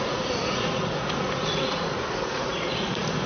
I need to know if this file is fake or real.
fake